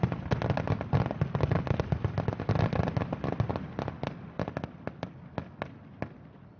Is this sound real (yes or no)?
yes